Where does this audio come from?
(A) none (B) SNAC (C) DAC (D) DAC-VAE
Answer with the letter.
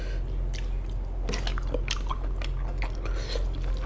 A